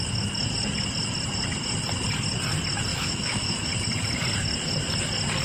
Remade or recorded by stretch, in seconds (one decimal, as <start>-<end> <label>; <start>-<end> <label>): 0.0-2.9 recorded; 2.9-3.7 remade; 3.7-5.4 recorded